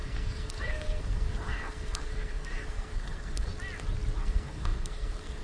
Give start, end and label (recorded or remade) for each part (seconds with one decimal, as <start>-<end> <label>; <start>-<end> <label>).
0.0-3.5 remade; 3.5-4.2 recorded; 4.2-5.4 remade